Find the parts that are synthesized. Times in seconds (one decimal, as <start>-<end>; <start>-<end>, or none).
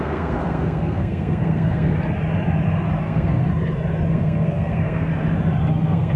0.0-1.9; 3.0-3.4; 4.1-5.1; 5.7-6.2